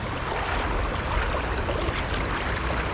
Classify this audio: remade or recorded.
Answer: recorded